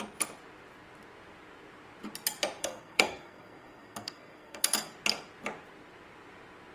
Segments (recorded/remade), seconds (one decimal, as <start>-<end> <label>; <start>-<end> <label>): 0.0-2.6 recorded; 2.6-4.9 remade; 4.9-6.7 recorded